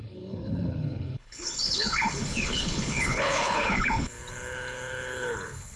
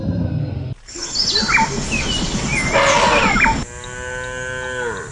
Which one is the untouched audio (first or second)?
second